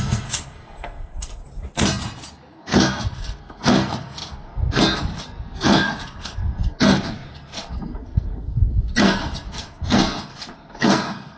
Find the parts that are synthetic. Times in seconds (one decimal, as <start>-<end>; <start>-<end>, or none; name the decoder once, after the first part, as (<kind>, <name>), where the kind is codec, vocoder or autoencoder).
0.0-1.4 (codec, SNAC); 2.6-11.4